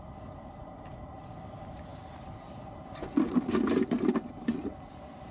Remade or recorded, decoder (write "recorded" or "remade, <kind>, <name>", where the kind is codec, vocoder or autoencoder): recorded